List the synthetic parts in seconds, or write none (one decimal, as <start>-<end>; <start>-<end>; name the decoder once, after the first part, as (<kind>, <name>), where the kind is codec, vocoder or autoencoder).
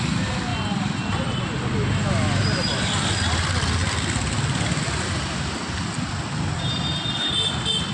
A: none